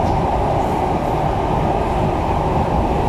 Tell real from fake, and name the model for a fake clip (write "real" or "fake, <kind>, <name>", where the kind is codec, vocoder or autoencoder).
real